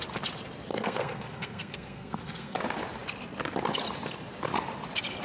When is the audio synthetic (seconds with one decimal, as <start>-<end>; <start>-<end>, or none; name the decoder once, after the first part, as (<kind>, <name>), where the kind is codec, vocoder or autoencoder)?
0.7-2.6 (codec, SNAC)